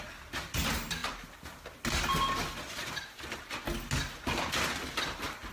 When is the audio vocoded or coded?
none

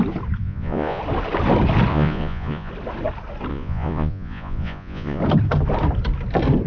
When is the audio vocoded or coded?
0.4-1.0; 1.9-2.7; 3.5-5.2